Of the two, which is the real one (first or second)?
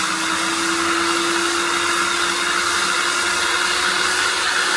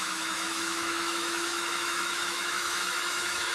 first